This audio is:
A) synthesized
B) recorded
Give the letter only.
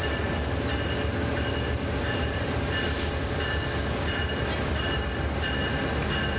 B